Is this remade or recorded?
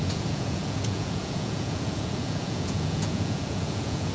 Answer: remade